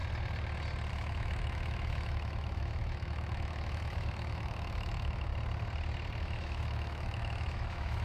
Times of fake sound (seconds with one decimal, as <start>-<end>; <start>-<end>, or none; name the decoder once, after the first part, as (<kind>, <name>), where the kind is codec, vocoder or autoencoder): 0.9-5.3 (autoencoder, DAC-VAE); 6.2-8.0